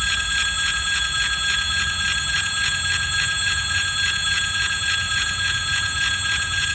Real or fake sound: fake